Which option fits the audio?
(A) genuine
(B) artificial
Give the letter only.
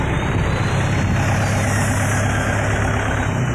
A